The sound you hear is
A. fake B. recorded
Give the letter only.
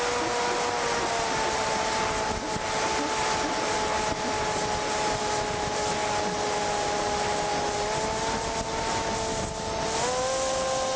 B